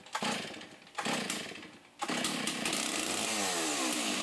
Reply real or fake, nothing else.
real